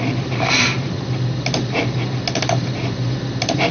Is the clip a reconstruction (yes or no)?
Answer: no